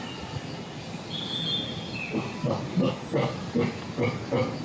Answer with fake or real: real